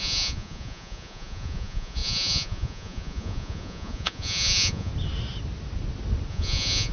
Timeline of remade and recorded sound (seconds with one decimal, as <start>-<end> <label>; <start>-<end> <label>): 0.0-4.9 remade; 4.9-6.3 recorded; 6.3-6.9 remade